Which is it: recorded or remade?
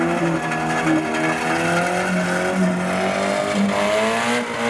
recorded